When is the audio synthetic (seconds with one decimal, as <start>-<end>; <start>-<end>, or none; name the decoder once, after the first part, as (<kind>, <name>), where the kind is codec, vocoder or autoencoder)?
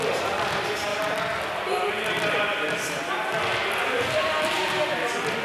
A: none